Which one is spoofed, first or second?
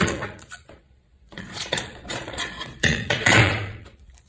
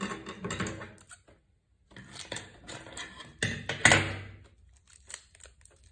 first